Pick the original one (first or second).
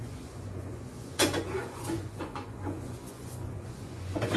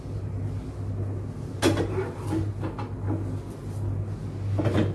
second